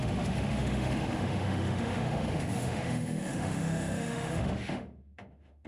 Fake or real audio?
fake